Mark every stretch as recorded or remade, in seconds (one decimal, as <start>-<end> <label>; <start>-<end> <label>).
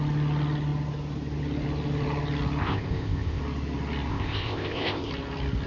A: 0.0-2.6 recorded; 2.6-3.4 remade; 3.4-4.1 recorded; 4.1-5.1 remade; 5.1-5.7 recorded